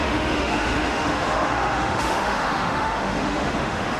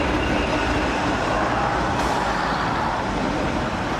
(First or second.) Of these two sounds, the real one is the second